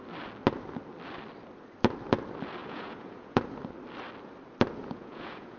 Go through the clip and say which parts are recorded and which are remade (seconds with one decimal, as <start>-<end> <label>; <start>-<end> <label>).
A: 0.0-2.6 recorded; 2.6-3.4 remade; 3.4-4.8 recorded; 4.8-5.6 remade